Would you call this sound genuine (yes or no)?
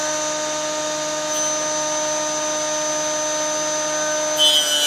yes